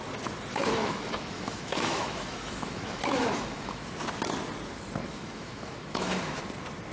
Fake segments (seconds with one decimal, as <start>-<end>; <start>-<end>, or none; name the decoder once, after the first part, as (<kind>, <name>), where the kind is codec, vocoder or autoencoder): 0.5-3.9 (autoencoder, DAC-VAE); 5.0-6.4